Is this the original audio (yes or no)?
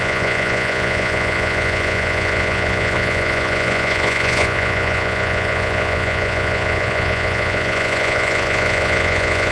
no